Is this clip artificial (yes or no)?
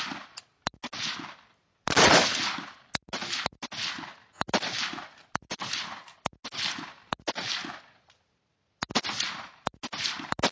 no